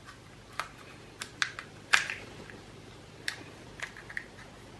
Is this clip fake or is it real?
real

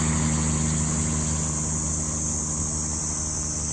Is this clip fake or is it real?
real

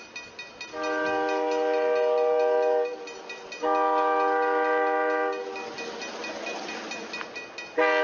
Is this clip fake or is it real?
real